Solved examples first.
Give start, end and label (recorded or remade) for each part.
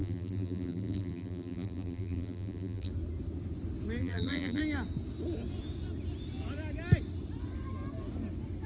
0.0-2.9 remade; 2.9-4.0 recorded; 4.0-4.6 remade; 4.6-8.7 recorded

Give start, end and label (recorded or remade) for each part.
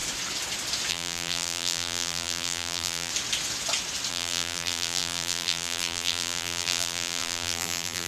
0.0-0.9 recorded; 0.9-3.1 remade; 3.1-4.1 recorded; 4.1-8.1 remade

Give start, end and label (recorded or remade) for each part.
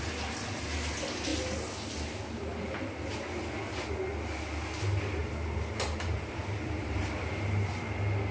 0.0-5.2 recorded; 5.2-7.8 remade; 7.8-8.3 recorded